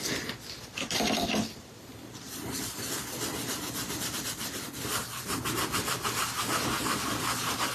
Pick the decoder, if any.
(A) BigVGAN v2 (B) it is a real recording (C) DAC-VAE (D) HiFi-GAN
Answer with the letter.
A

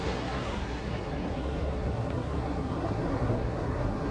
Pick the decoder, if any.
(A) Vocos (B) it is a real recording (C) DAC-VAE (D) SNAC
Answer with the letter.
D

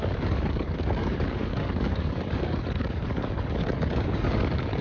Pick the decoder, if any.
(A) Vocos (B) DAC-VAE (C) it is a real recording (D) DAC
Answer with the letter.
D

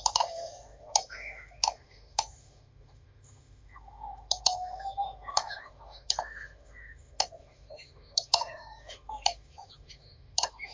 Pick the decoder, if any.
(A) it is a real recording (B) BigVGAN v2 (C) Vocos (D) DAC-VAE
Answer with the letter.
D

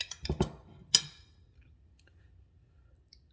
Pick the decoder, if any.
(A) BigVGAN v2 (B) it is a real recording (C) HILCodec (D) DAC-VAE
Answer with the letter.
B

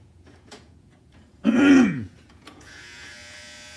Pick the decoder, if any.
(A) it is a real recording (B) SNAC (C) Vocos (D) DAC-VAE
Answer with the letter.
C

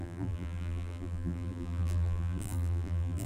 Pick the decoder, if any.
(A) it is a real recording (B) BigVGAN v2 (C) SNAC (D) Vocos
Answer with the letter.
B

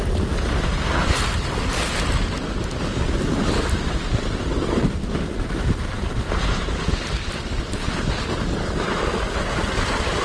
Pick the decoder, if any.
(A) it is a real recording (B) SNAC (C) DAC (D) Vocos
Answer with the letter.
A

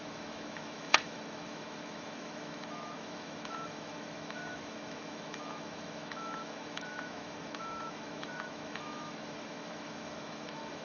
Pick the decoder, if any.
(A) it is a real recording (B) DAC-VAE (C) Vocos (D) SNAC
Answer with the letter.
B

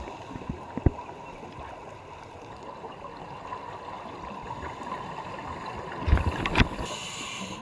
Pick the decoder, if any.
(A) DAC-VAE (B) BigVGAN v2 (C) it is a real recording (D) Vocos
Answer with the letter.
C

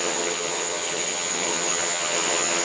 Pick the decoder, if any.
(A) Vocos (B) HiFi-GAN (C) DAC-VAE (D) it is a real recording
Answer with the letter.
B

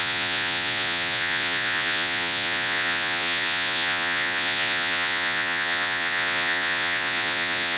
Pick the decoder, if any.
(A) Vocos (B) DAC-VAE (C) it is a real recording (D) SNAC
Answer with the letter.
A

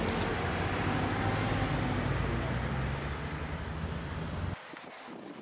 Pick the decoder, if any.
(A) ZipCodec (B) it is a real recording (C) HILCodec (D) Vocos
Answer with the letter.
B